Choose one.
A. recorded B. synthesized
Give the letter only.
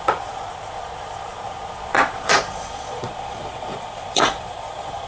B